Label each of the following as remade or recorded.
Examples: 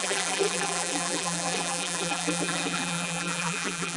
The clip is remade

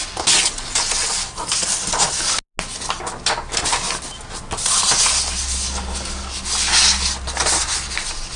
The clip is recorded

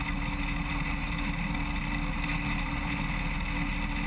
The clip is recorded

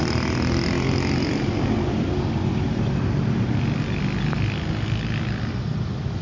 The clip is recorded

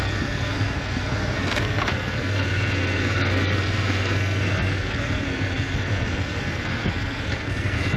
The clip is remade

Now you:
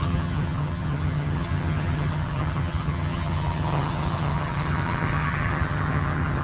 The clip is remade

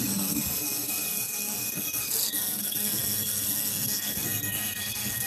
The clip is remade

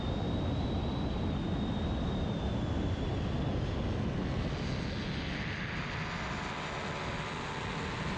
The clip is recorded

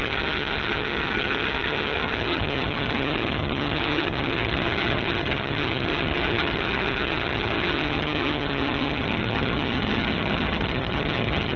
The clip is remade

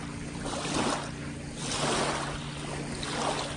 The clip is recorded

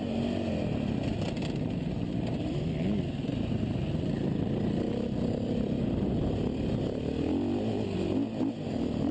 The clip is recorded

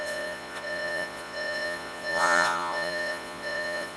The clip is remade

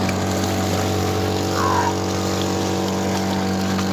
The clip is recorded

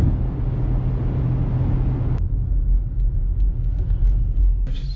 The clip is recorded